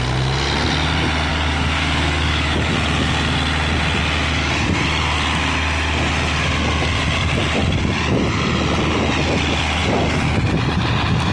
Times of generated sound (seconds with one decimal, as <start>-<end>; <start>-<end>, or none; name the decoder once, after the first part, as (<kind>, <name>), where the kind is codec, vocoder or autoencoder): 1.3-2.7 (codec, DAC)